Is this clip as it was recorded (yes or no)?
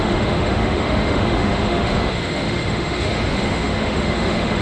no